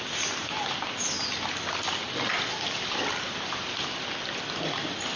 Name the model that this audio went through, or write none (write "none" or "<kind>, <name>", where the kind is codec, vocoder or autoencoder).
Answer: none